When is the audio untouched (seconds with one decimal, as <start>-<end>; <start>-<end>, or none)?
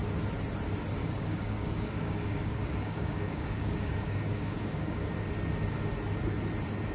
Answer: 0.0-1.0; 5.1-6.9